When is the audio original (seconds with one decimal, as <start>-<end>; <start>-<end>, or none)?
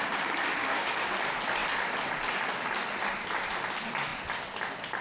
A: 0.0-0.6; 1.1-5.0